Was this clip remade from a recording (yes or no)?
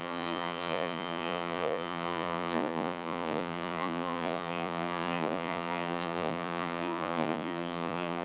yes